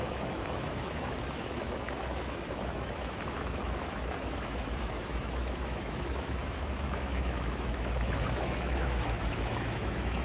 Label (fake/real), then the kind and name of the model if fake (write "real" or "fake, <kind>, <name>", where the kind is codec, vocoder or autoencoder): fake, autoencoder, DAC-VAE